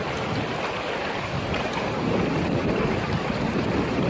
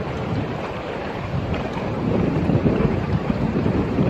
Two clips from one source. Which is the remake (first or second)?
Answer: second